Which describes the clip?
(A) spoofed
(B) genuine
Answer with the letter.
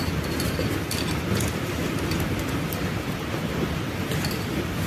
B